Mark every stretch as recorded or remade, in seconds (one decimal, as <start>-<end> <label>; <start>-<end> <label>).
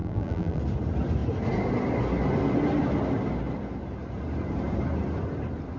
0.0-0.6 remade; 0.6-5.8 recorded